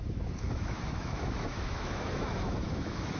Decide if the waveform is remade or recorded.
remade